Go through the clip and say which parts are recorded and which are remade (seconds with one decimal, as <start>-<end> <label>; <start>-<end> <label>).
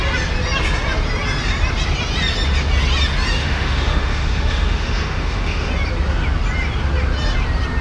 0.0-3.4 recorded; 3.4-5.7 remade; 5.7-7.8 recorded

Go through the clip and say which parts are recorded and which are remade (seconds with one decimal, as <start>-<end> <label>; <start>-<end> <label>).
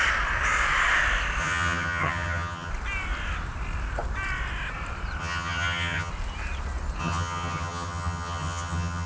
0.0-1.4 recorded; 1.4-2.7 remade; 2.7-5.2 recorded; 5.2-6.1 remade; 6.1-7.0 recorded; 7.0-9.1 remade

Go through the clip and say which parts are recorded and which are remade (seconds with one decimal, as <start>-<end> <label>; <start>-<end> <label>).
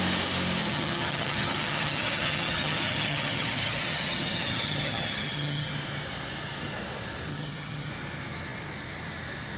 0.0-0.6 recorded; 0.6-5.7 remade; 5.7-7.3 recorded; 7.3-7.9 remade; 7.9-9.6 recorded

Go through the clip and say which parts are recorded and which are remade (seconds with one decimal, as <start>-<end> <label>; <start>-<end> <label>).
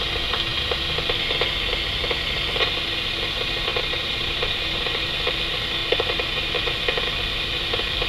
0.0-3.7 recorded; 3.7-5.1 remade; 5.1-5.8 recorded; 5.8-6.7 remade; 6.7-8.1 recorded